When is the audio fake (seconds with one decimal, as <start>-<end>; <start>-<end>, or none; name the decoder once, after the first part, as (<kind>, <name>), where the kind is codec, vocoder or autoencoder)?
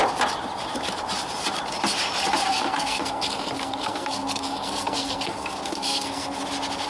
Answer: 2.5-6.4 (codec, SNAC)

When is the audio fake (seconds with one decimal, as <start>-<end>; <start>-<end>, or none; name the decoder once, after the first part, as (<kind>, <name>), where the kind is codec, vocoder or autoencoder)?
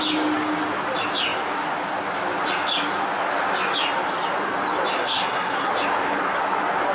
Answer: 5.0-5.7 (codec, SNAC)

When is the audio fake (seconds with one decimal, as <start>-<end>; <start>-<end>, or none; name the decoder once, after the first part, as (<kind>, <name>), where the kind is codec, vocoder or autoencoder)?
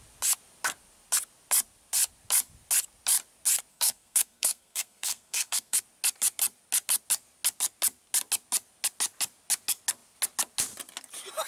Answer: 3.7-5.8 (codec, SNAC)